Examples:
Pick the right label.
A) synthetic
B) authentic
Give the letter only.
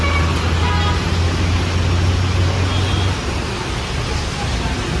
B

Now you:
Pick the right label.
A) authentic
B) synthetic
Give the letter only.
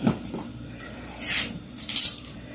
B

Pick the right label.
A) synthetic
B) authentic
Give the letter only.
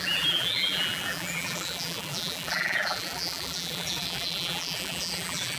A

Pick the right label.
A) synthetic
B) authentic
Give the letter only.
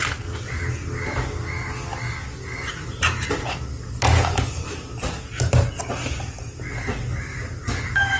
B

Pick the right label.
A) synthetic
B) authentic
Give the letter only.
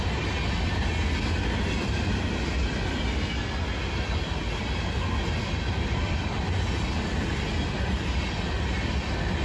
B